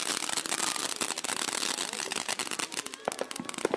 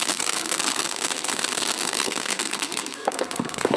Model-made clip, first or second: second